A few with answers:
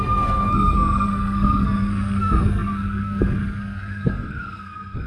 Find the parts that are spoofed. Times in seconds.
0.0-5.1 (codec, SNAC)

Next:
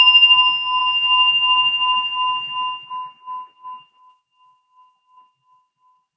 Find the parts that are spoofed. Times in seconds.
none

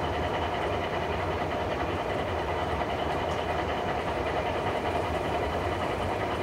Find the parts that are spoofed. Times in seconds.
2.6-5.4 (vocoder, BigVGAN v2)

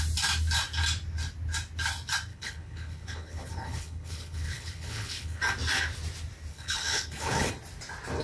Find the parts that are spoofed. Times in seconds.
2.3-5.4 (codec, HILCodec); 6.5-7.5

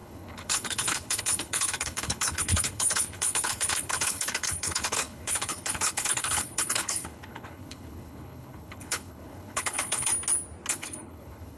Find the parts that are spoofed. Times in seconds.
0.0-10.1 (codec, HILCodec); 10.7-11.6